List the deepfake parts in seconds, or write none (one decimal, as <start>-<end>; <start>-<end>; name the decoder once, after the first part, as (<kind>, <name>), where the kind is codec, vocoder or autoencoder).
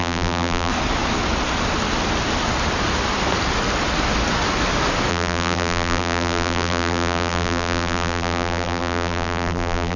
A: 0.0-0.7 (vocoder, BigVGAN v2); 5.1-10.0